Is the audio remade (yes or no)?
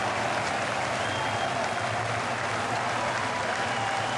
no